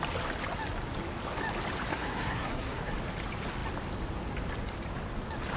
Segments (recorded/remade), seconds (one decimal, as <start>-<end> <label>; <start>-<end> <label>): 0.0-1.9 recorded; 1.9-2.9 remade; 2.9-5.6 recorded